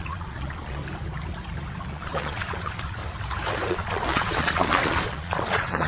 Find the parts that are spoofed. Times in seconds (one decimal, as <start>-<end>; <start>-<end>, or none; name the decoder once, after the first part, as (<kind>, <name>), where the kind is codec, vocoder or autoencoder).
0.0-0.8 (vocoder, Vocos); 1.9-3.0; 3.7-5.9